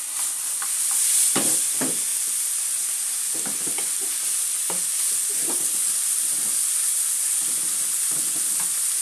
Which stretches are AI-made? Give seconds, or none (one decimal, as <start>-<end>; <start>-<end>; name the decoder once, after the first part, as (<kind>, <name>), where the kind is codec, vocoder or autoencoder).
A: none